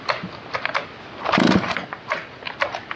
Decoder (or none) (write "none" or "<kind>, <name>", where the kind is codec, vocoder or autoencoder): none